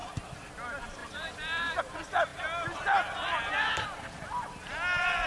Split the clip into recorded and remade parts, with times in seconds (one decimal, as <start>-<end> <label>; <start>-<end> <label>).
0.0-0.5 remade; 0.5-1.0 recorded; 1.0-1.8 remade; 1.8-5.3 recorded